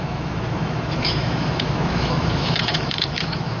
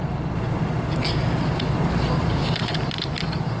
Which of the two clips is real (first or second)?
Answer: second